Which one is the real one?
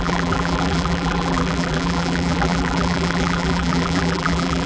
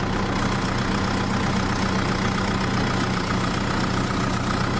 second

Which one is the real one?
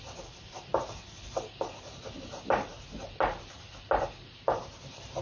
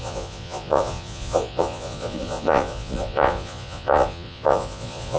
first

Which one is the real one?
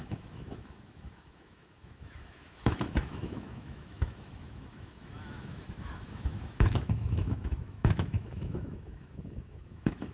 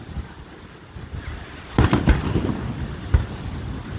second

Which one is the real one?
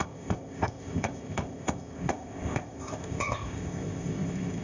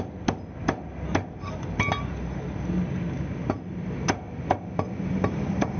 second